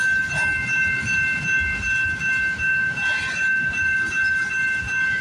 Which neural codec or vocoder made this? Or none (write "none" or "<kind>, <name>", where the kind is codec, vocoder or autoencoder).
none